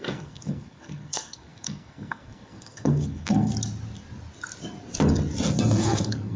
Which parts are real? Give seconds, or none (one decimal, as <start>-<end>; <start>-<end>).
3.5-5.8